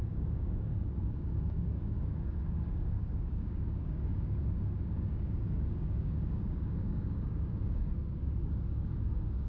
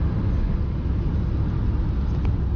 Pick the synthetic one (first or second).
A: first